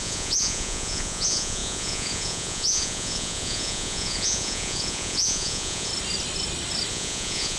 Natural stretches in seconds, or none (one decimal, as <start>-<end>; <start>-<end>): 5.9-6.9